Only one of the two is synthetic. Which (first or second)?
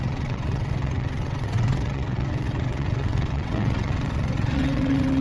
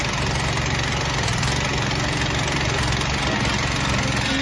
first